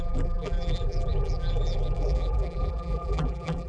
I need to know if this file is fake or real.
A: fake